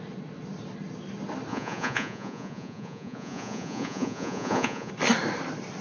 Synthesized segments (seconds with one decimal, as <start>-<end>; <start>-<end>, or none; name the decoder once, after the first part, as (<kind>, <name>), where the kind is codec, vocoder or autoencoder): 1.5-4.9 (vocoder, Vocos)